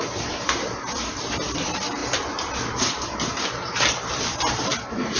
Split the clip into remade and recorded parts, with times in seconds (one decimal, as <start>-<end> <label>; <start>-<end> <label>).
0.0-5.2 remade